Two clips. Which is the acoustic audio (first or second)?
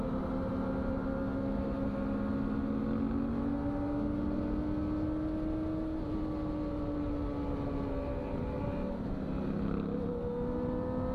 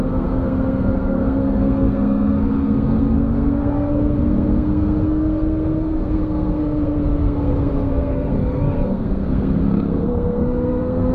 first